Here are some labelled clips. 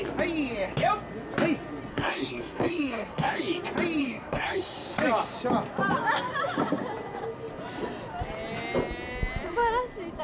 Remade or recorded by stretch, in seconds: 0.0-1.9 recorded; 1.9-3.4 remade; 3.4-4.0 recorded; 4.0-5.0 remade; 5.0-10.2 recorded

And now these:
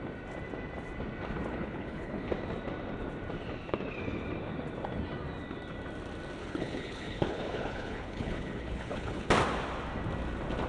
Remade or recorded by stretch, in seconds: 0.0-1.5 recorded; 1.5-2.3 remade; 2.3-6.4 recorded; 6.4-9.3 remade; 9.3-10.7 recorded

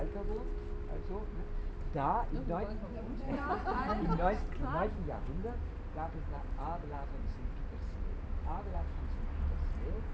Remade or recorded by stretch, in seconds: 0.0-10.1 recorded

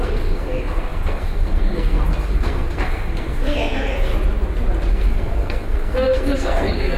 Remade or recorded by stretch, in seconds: 0.0-4.1 remade; 4.1-4.9 recorded; 4.9-7.0 remade

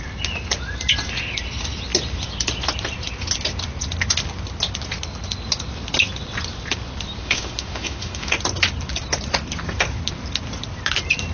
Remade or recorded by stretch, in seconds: 0.0-7.2 recorded; 7.2-8.3 remade; 8.3-11.3 recorded